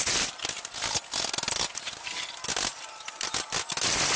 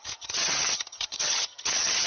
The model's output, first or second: second